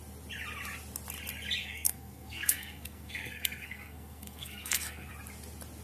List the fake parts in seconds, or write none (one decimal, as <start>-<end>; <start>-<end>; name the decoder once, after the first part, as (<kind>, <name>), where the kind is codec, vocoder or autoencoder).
1.6-5.1 (codec, SNAC)